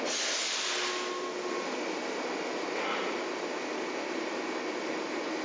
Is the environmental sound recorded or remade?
recorded